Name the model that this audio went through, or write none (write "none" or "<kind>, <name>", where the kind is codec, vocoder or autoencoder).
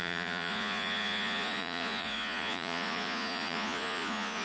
vocoder, Vocos